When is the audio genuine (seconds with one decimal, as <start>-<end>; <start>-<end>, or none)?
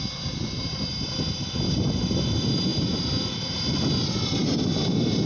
0.0-5.3